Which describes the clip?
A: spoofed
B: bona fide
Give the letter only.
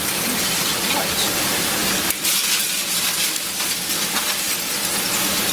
B